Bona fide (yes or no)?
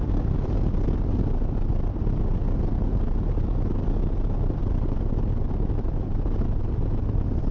yes